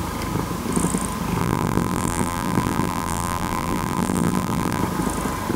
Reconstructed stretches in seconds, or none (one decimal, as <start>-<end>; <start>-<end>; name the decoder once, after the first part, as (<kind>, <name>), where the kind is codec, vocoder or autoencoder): 1.4-4.8 (vocoder, BigVGAN v2)